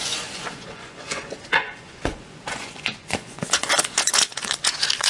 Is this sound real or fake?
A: fake